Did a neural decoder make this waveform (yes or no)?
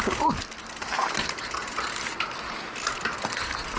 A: no